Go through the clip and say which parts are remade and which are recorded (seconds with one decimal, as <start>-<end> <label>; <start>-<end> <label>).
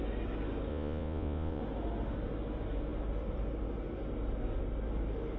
0.0-0.7 recorded; 0.7-1.6 remade; 1.6-5.4 recorded